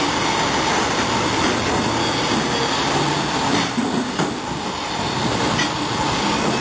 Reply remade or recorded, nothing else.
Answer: recorded